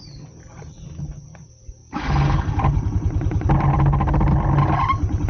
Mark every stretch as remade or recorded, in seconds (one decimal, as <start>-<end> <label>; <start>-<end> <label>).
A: 0.0-5.3 recorded